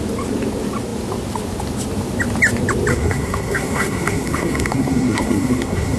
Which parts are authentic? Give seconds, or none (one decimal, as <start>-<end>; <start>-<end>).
0.0-2.9